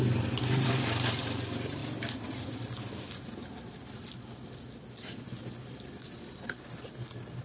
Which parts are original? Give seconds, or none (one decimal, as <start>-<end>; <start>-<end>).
0.0-7.4